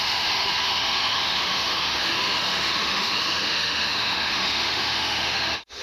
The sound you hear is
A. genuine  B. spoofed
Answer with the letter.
B